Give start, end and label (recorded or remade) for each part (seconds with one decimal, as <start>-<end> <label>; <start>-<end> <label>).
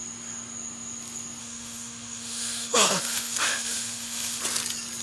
0.0-1.4 recorded; 1.4-4.4 remade; 4.4-5.0 recorded